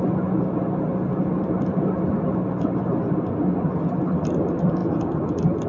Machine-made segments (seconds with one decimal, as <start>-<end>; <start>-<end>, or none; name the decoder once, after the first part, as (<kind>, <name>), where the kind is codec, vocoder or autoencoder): 0.9-2.8 (vocoder, BigVGAN v2)